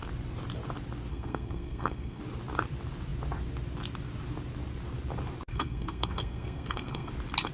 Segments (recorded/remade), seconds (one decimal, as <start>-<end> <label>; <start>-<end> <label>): 0.0-1.1 recorded; 1.1-2.2 remade; 2.2-5.5 recorded; 5.5-7.1 remade; 7.1-7.5 recorded